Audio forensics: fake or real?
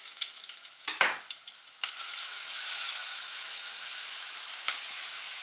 fake